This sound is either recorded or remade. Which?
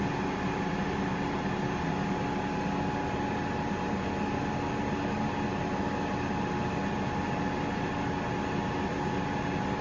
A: recorded